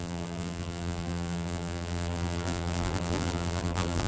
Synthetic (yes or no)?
yes